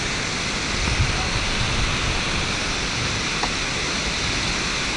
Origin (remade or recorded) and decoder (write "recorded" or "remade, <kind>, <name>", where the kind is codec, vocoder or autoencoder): recorded